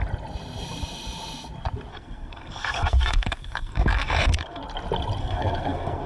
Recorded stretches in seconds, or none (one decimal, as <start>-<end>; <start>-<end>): 0.0-1.9; 4.6-5.2